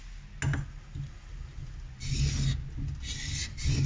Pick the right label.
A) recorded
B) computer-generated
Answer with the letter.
A